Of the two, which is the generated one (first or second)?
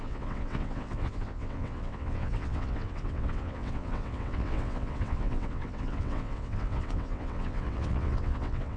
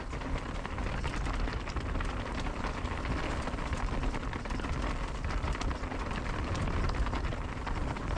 first